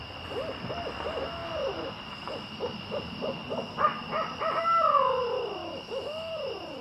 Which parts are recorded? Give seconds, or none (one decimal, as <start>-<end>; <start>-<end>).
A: 0.0-5.6; 6.3-6.8